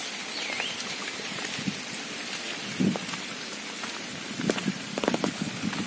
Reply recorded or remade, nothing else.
recorded